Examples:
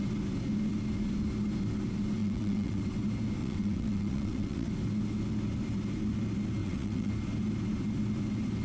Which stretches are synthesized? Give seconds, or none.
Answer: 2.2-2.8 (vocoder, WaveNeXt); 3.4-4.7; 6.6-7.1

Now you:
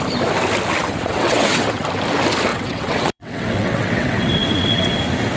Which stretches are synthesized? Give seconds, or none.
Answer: 0.8-1.8 (vocoder, WaveNeXt); 2.5-5.0

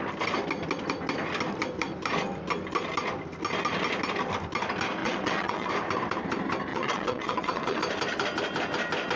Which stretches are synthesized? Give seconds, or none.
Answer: 5.0-5.7 (vocoder, WaveNeXt); 6.7-7.8

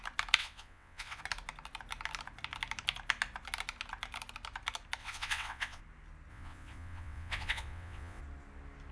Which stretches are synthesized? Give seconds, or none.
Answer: 0.4-1.2 (vocoder, WaveNeXt); 5.0-5.8; 6.3-8.2